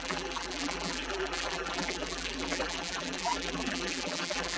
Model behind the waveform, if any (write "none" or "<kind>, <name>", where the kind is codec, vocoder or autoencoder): vocoder, BigVGAN v2